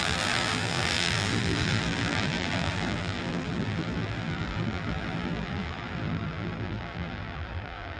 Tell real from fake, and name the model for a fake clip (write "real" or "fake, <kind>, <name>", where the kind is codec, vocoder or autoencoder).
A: fake, vocoder, BigVGAN v2